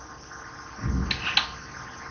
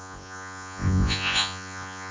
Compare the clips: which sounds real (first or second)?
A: first